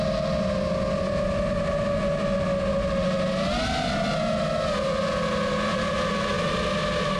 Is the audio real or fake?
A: real